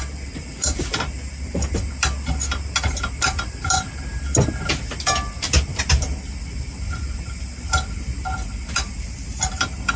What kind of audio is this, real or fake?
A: real